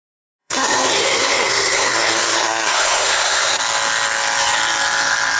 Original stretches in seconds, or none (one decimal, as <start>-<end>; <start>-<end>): 0.0-0.4; 3.6-5.4